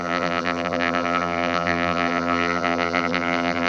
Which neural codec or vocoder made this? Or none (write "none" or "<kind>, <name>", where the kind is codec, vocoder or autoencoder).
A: vocoder, BigVGAN v2